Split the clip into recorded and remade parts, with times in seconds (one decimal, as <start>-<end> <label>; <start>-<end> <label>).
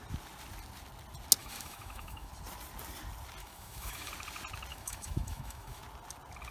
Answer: 0.0-1.4 recorded; 1.4-2.3 remade; 2.3-3.4 recorded; 3.4-4.1 remade; 4.1-4.7 recorded; 4.7-5.8 remade; 5.8-6.5 recorded